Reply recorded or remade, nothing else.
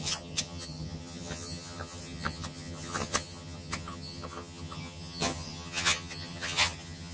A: remade